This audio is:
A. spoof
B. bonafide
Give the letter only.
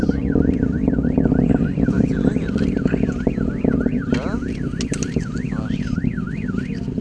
B